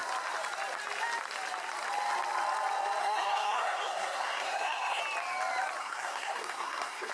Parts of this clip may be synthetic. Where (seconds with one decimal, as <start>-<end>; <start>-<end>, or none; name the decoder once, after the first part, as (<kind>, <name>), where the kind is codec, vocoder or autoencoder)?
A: 3.0-5.0 (codec, SNAC); 5.8-7.1